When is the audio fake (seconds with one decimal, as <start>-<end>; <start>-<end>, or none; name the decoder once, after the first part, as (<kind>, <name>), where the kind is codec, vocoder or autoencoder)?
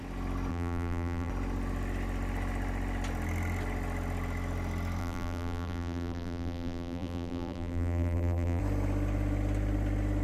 0.5-1.3 (vocoder, BigVGAN v2); 5.0-8.6